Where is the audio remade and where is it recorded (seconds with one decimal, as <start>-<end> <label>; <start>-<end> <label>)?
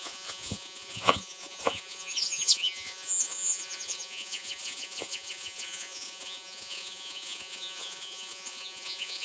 0.0-9.2 remade